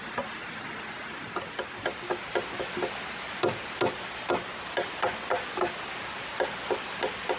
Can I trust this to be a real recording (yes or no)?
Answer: yes